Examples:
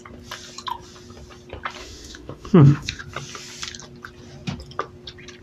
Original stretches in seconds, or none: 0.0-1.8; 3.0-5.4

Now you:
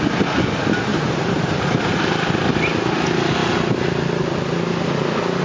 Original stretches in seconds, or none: 0.0-0.9; 1.9-5.4

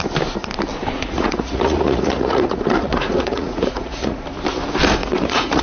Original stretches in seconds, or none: 0.0-0.8; 4.2-5.0

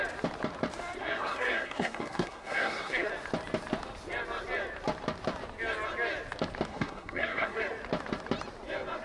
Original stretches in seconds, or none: 0.0-1.0; 3.1-6.7; 7.6-9.0

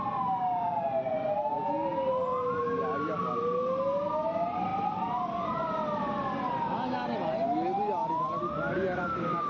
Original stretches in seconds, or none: 0.0-9.5

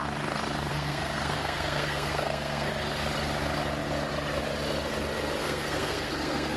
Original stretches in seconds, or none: 0.0-0.7; 2.7-5.4

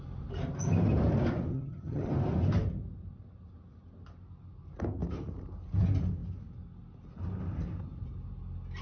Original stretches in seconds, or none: 0.0-1.5; 2.1-8.8

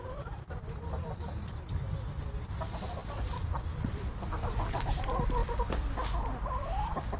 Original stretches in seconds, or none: 0.0-7.2